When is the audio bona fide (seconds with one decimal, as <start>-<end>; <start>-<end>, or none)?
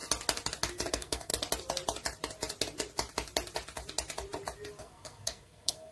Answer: 0.0-0.9; 1.3-4.8